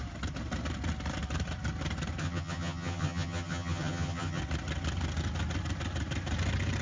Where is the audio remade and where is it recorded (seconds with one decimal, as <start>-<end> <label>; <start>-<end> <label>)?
0.0-2.2 recorded; 2.2-4.4 remade; 4.4-6.8 recorded